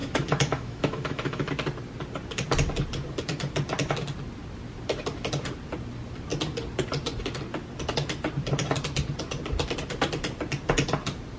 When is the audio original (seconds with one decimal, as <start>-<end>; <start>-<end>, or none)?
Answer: 1.5-11.4